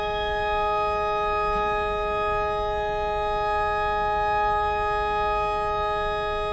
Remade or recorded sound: recorded